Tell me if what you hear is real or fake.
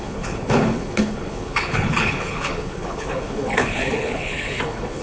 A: fake